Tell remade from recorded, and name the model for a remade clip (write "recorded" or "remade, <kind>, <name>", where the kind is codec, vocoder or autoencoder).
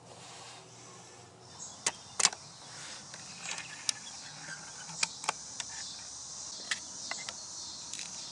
recorded